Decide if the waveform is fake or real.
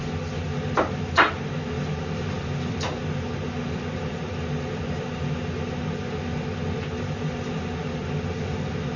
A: fake